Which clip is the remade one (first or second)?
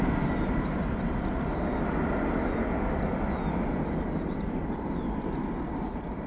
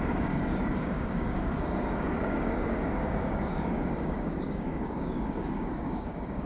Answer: second